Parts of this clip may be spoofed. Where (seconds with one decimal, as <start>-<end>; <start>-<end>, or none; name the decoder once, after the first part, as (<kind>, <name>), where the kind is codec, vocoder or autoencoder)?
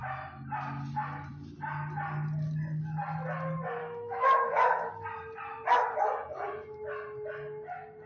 3.8-4.9 (autoencoder, DAC-VAE)